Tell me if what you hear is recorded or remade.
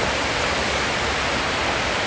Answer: recorded